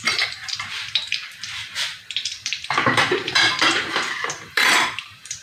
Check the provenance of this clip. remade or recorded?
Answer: remade